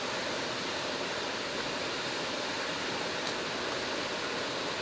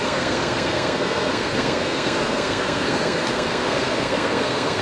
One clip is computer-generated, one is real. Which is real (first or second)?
first